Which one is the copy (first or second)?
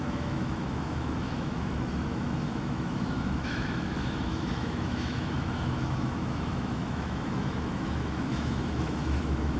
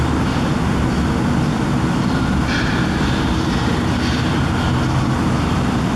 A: first